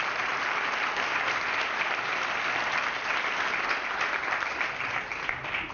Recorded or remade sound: recorded